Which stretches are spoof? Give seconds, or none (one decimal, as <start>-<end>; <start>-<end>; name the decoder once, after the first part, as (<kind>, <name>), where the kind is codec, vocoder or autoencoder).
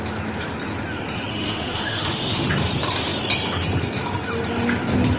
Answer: 1.3-2.5 (autoencoder, DAC-VAE)